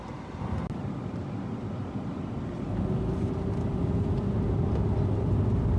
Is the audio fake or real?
real